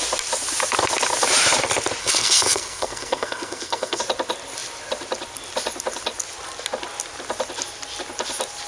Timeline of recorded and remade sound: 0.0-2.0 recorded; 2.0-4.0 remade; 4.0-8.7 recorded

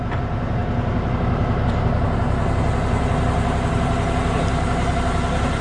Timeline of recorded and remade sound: 0.0-5.6 recorded

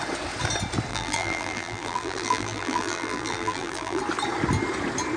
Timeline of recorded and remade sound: 0.0-0.9 recorded; 0.9-4.0 remade; 4.0-5.2 recorded

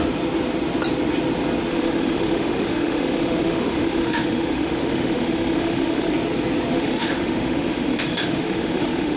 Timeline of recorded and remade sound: 0.0-1.7 recorded; 1.7-6.1 remade; 6.1-6.7 recorded; 6.7-9.2 remade

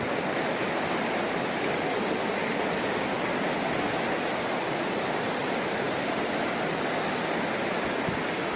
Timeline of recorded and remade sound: 0.0-2.4 recorded; 2.4-2.9 remade; 2.9-4.2 recorded; 4.2-5.0 remade; 5.0-5.4 recorded; 5.4-5.9 remade; 5.9-8.6 recorded

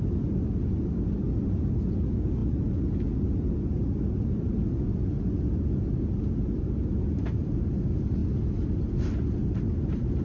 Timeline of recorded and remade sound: 0.0-2.4 recorded; 2.4-4.7 remade; 4.7-10.2 recorded

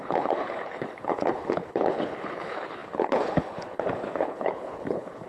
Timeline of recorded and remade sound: 0.0-5.3 remade